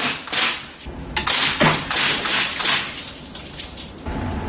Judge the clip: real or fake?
real